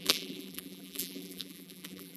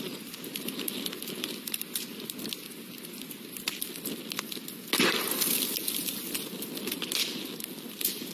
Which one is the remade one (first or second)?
first